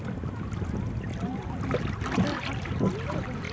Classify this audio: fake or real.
real